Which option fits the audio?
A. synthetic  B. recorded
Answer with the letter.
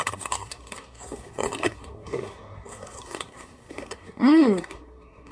A